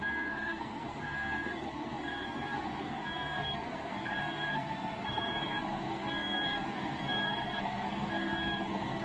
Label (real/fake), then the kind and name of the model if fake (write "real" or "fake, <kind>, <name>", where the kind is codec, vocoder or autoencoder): fake, codec, SNAC